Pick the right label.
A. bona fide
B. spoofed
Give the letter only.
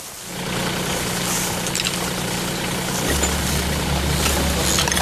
A